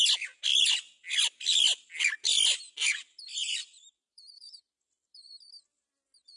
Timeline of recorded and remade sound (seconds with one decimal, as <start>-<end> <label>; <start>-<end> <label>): 0.0-3.4 recorded; 3.4-4.7 remade; 4.7-6.4 recorded